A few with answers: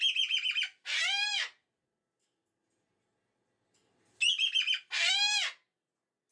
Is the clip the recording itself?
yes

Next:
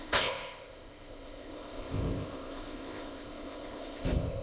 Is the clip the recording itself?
no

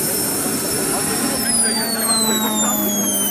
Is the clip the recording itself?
yes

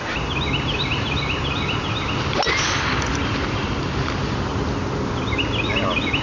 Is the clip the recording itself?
yes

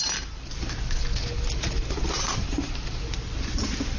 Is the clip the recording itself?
yes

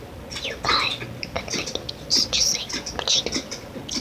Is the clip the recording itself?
yes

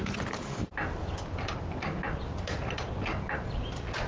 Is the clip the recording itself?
yes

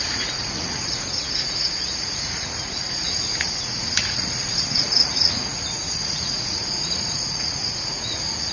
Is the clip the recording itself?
no